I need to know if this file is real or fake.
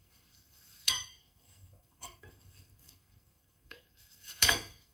fake